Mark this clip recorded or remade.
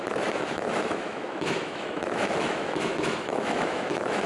remade